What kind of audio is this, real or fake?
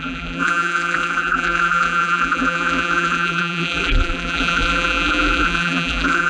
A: fake